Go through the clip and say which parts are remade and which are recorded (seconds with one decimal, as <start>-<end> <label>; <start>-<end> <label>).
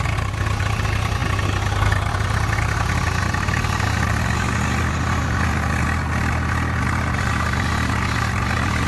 0.0-8.9 recorded